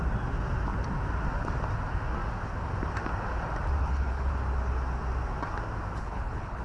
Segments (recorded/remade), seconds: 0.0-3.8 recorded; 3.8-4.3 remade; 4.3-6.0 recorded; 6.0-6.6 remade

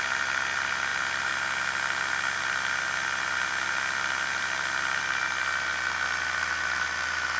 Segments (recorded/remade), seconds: 0.0-7.4 recorded